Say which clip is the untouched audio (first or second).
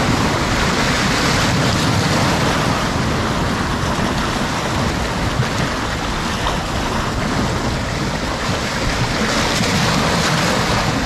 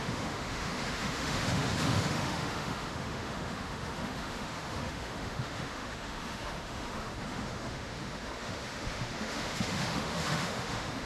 first